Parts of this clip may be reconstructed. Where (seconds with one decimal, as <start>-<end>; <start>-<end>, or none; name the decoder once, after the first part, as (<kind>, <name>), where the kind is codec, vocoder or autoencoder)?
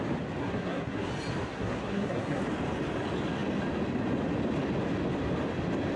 0.4-1.1 (codec, SNAC); 1.5-2.4